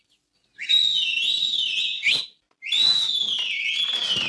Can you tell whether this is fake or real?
real